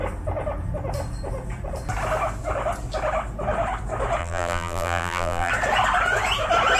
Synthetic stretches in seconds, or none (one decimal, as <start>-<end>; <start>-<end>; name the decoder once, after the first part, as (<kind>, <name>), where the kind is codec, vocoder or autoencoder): 4.2-5.5 (vocoder, BigVGAN v2)